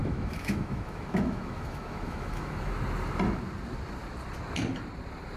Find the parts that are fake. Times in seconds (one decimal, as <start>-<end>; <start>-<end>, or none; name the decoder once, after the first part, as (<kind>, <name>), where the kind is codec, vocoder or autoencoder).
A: 0.0-2.7 (autoencoder, DAC-VAE)